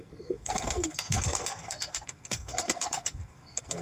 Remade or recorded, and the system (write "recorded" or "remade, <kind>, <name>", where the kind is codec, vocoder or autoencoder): remade, codec, SNAC